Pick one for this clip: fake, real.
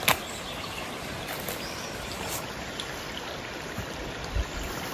fake